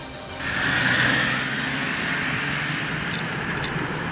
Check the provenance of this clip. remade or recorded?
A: recorded